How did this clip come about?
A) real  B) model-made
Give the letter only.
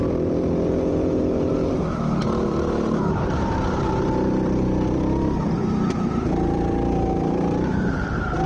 B